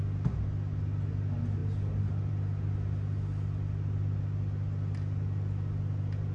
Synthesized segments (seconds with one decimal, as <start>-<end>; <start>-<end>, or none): none